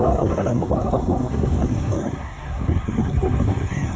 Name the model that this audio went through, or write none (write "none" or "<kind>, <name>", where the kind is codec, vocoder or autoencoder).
codec, SNAC